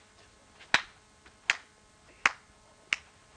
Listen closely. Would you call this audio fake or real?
real